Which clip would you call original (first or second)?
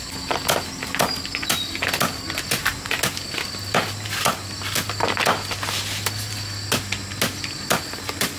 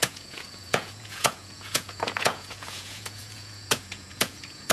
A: first